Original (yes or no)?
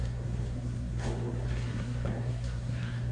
no